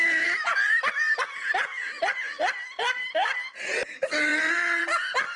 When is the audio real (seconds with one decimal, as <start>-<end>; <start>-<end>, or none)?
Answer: 0.0-5.4